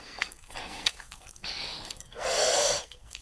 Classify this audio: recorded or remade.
remade